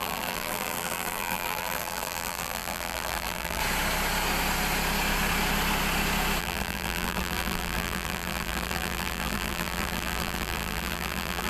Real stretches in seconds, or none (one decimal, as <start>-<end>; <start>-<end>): 3.6-6.4